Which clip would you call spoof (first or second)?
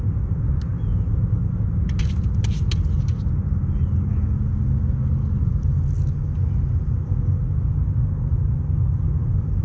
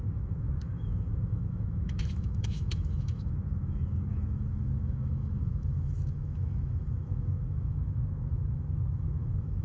second